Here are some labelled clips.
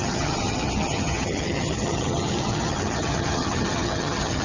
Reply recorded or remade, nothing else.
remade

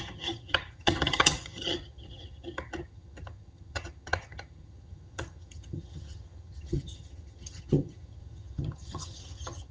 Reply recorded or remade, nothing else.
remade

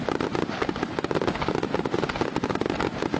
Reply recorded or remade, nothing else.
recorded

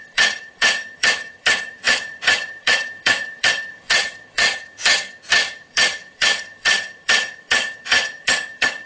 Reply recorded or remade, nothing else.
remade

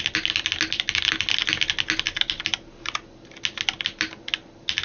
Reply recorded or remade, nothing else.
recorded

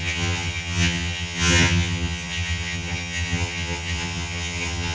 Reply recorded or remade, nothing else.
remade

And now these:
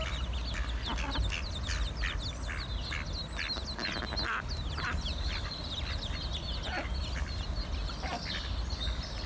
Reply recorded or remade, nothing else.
recorded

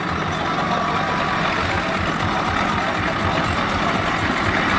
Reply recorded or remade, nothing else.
recorded